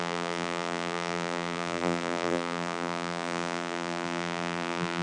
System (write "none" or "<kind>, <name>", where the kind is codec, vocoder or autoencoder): vocoder, BigVGAN v2